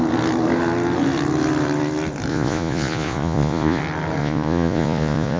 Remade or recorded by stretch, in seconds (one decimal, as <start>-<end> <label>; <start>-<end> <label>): 0.0-2.3 recorded; 2.3-3.8 remade; 3.8-4.2 recorded; 4.2-5.4 remade